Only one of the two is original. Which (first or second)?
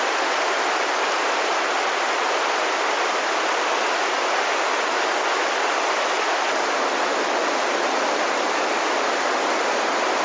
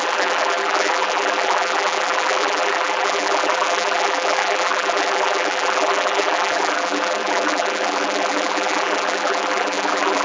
first